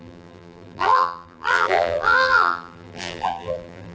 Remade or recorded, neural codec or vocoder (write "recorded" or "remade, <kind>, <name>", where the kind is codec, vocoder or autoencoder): remade, vocoder, BigVGAN v2